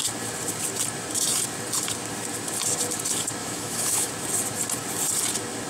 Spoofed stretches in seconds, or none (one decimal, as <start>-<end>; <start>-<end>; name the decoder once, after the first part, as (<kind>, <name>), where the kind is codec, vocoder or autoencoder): 3.4-4.1 (autoencoder, DAC-VAE)